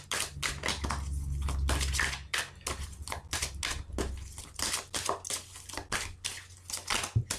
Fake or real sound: real